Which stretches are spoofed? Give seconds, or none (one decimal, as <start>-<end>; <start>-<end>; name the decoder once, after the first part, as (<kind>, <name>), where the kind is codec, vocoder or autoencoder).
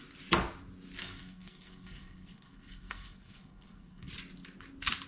1.0-4.1 (codec, SNAC)